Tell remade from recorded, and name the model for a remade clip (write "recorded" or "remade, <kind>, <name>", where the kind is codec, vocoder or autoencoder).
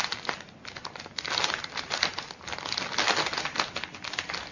recorded